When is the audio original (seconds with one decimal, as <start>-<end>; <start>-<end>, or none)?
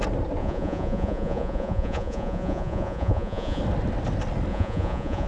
0.0-0.4; 3.6-4.5